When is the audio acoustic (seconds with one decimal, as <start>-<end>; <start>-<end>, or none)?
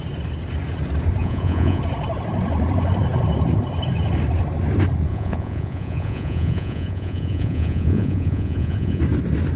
0.0-1.2; 1.8-5.1; 9.0-9.6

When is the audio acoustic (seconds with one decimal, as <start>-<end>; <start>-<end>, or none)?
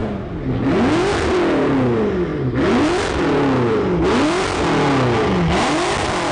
0.0-6.3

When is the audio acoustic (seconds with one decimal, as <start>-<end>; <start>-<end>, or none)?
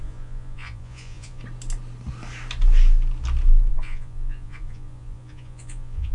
1.4-3.7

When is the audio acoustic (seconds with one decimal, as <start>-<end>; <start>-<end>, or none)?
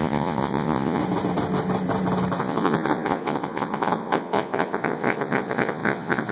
1.0-2.4